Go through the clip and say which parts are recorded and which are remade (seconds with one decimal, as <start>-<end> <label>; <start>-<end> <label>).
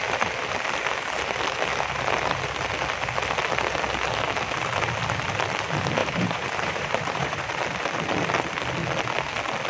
0.0-6.0 recorded; 6.0-7.6 remade; 7.6-9.7 recorded